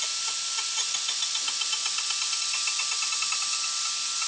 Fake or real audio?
real